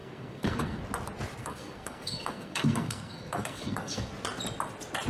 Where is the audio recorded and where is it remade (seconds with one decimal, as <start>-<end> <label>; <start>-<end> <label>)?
0.0-0.8 remade; 0.8-1.4 recorded; 1.4-4.1 remade; 4.1-5.1 recorded